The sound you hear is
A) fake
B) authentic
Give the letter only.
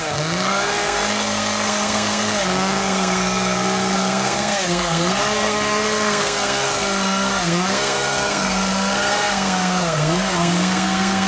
A